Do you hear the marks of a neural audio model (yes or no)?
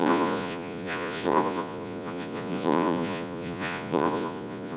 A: yes